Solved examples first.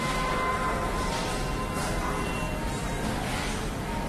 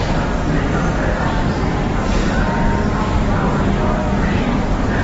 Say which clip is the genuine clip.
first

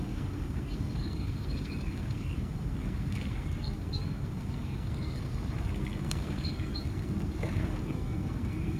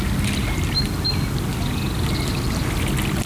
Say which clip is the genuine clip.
second